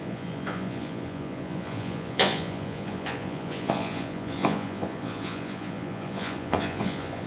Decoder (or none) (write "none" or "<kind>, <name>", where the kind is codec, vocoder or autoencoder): vocoder, Vocos